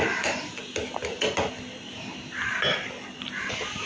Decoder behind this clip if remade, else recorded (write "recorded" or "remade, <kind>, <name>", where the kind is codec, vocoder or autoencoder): recorded